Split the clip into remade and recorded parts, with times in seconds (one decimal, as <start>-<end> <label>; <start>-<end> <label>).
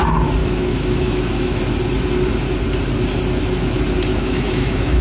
0.0-0.4 recorded; 0.4-1.6 remade; 1.6-4.1 recorded; 4.1-5.0 remade